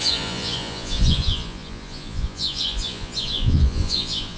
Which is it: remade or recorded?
remade